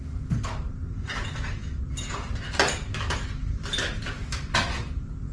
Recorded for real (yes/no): yes